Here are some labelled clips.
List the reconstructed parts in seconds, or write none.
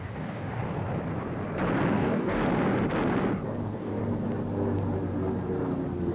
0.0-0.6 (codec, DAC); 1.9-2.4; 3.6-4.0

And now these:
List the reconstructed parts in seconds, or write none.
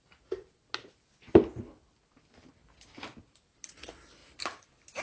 none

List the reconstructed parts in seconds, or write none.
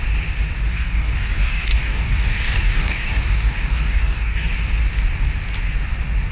0.7-4.5 (codec, DAC)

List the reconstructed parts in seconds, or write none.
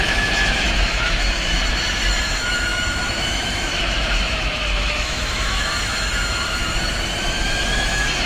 0.0-1.6 (autoencoder, DAC-VAE); 2.2-6.6; 7.3-8.3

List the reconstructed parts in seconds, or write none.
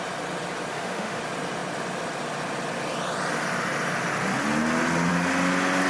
0.7-1.2 (autoencoder, DAC-VAE)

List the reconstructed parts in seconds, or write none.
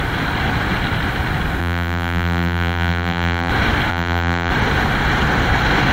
1.6-3.5 (vocoder, BigVGAN v2); 3.9-4.5